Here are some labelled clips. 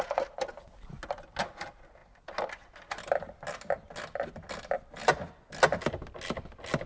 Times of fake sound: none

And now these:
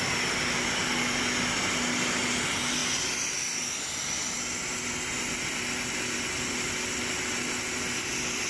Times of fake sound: none